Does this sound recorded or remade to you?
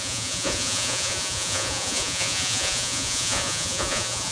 remade